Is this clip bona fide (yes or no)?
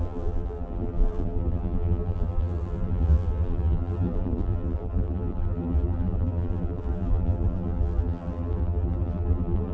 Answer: no